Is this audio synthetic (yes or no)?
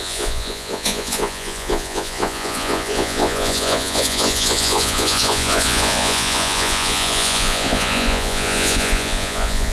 yes